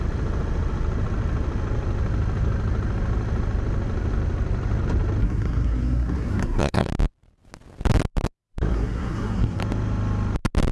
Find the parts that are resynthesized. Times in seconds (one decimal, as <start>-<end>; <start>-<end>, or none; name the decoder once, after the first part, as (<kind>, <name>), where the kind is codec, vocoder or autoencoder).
5.2-6.9 (codec, SNAC); 8.7-9.6